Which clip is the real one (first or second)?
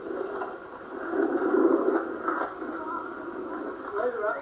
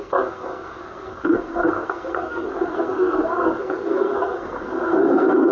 first